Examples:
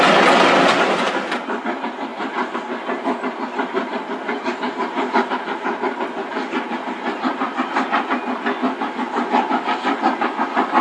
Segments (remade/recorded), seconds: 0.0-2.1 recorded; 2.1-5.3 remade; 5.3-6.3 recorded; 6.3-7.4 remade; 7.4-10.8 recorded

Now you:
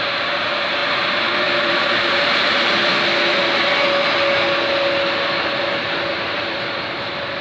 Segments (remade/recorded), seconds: 0.0-2.8 remade; 2.8-6.1 recorded; 6.1-7.4 remade

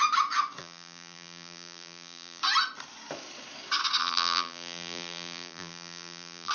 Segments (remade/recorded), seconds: 0.0-0.6 recorded; 0.6-2.4 remade; 2.4-4.0 recorded; 4.0-6.5 remade